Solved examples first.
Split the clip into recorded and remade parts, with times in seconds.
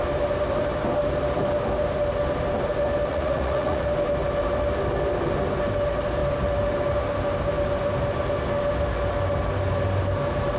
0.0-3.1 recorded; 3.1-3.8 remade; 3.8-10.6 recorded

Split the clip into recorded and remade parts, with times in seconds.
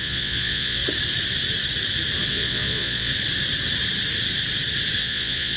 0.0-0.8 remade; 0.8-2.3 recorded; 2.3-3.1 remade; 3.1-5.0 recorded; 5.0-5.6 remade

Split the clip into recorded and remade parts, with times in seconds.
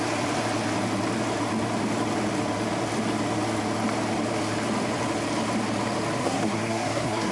0.0-6.2 recorded; 6.2-7.3 remade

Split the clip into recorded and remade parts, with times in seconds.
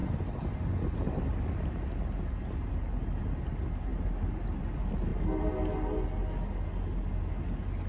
0.0-7.9 recorded